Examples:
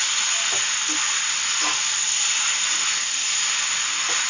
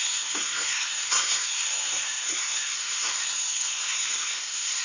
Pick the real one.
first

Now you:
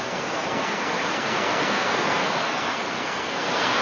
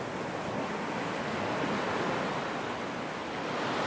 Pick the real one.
second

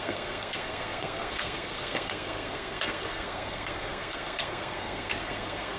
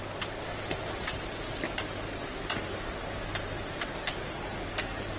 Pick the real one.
second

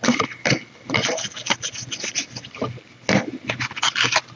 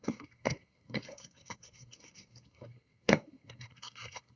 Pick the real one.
first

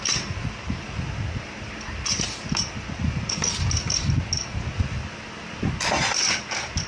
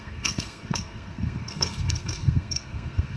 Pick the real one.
first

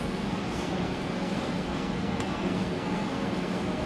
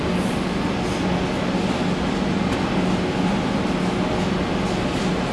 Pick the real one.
second